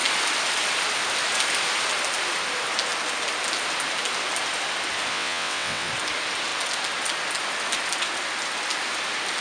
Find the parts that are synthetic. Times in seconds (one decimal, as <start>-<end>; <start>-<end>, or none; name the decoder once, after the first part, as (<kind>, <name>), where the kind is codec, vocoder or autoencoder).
5.1-5.9 (vocoder, WaveNeXt)